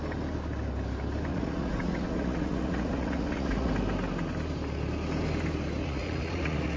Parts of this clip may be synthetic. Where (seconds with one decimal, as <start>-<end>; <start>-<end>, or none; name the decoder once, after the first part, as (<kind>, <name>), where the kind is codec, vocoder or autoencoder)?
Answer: 1.3-3.7 (vocoder, Vocos); 5.8-6.8